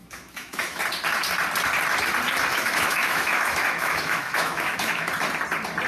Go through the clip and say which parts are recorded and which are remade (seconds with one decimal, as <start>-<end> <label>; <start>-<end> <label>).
0.0-0.8 remade; 0.8-2.5 recorded; 2.5-5.1 remade; 5.1-5.9 recorded

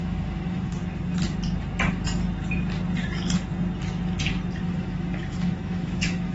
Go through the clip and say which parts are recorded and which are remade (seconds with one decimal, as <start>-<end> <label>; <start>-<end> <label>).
0.0-0.8 remade; 0.8-4.6 recorded; 4.6-6.3 remade

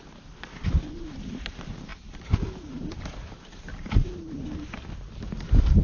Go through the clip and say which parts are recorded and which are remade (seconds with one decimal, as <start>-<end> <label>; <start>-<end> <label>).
0.0-5.8 recorded

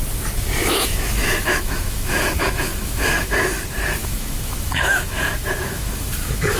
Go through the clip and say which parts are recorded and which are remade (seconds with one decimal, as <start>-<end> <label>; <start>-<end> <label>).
0.0-0.6 recorded; 0.6-3.6 remade; 3.6-4.0 recorded; 4.0-6.6 remade

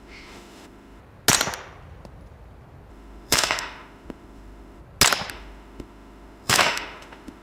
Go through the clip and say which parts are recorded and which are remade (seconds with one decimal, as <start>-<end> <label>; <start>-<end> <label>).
0.0-1.0 remade; 1.0-2.9 recorded; 2.9-4.8 remade; 4.8-5.3 recorded; 5.3-7.4 remade

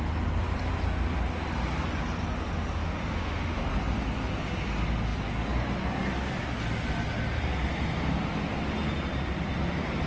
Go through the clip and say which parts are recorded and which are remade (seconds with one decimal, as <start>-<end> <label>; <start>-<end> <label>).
0.0-2.8 recorded; 2.8-3.6 remade; 3.6-10.1 recorded

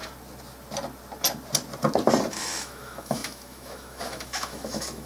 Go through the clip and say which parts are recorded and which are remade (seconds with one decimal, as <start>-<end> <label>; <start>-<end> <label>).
0.0-2.3 recorded; 2.3-5.1 remade